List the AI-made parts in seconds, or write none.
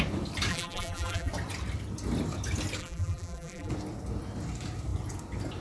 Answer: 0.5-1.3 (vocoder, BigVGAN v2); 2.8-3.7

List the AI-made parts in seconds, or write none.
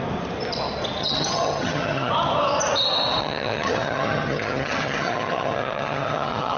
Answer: 1.0-2.1 (vocoder, HiFi-GAN); 3.2-6.6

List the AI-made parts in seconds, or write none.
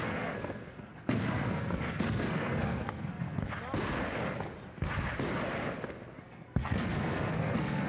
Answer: 0.0-3.4 (codec, SNAC); 6.2-7.9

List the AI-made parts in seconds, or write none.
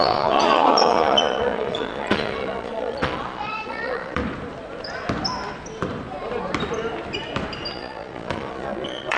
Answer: 0.0-4.2 (vocoder, Vocos); 7.7-9.2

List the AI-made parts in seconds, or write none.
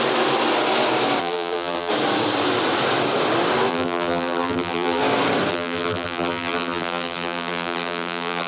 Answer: 1.2-1.9 (vocoder, BigVGAN v2); 3.7-5.0; 5.5-8.5